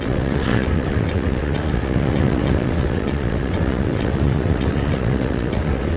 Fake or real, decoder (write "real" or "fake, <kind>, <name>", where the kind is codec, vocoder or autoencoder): fake, vocoder, WaveNeXt